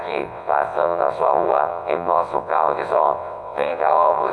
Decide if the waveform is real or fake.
fake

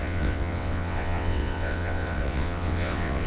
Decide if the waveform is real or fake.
fake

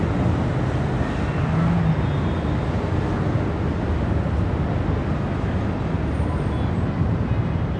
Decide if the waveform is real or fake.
real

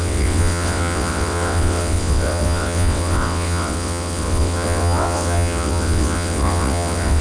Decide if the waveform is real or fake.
fake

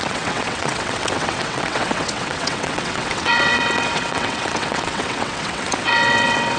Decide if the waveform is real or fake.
fake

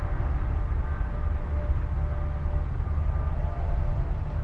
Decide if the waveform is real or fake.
real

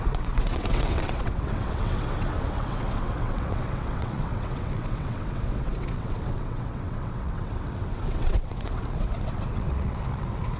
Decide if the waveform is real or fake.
fake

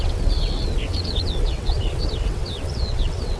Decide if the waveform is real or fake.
fake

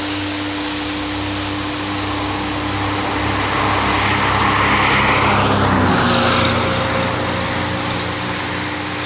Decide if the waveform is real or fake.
real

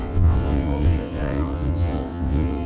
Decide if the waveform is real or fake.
fake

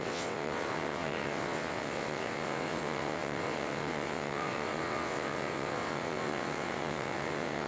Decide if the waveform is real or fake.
fake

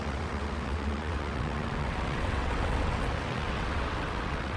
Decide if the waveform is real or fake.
fake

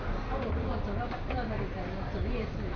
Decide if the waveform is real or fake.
real